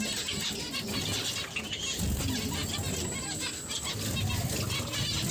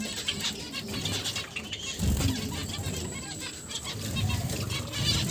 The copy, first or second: second